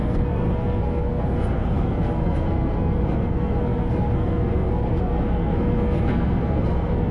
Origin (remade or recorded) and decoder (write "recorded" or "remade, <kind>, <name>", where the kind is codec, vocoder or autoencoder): remade, codec, SNAC